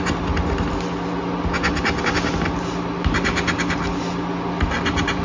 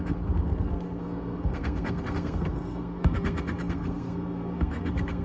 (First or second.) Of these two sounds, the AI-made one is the second